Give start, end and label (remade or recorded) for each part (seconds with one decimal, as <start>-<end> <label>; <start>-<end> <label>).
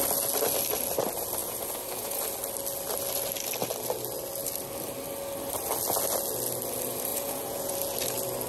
0.0-1.4 recorded; 1.4-2.2 remade; 2.2-7.1 recorded; 7.1-7.7 remade; 7.7-8.5 recorded